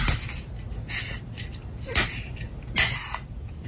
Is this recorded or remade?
recorded